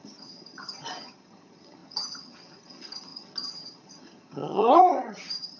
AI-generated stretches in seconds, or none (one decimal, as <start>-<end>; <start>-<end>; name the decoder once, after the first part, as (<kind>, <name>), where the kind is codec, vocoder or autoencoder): 0.0-5.6 (vocoder, HiFi-GAN)